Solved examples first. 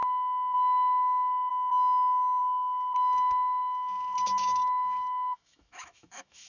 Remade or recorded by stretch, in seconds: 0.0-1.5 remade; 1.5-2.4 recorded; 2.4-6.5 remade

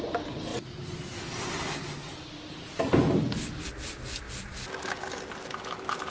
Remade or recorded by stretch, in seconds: 0.0-6.1 recorded